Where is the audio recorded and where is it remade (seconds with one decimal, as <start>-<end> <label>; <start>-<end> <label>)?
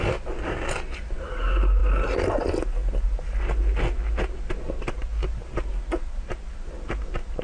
0.0-7.4 recorded